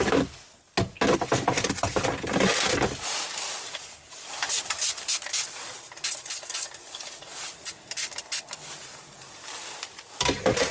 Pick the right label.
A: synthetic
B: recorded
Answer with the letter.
B